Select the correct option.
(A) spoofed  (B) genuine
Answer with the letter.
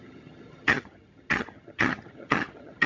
A